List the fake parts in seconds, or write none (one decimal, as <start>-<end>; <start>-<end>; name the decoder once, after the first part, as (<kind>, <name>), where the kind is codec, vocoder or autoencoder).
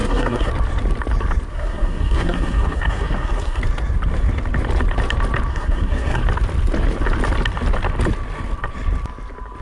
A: 0.0-0.5 (codec, SNAC); 1.5-3.6; 5.5-6.2